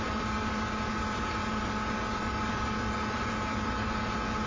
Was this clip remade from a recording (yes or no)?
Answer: no